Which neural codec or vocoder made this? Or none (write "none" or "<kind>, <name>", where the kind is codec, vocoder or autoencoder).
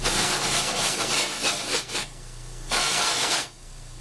codec, SNAC